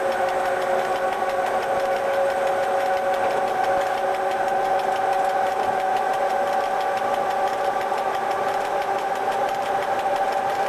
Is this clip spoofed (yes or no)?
no